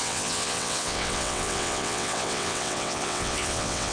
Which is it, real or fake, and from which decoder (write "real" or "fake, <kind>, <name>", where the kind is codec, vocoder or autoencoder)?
fake, vocoder, WaveNeXt